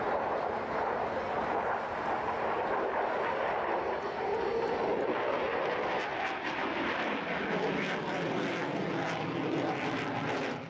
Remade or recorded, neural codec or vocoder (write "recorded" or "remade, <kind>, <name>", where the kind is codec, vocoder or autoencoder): recorded